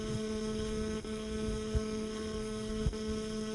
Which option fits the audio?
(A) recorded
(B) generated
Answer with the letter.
B